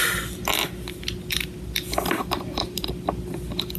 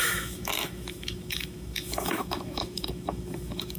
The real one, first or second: first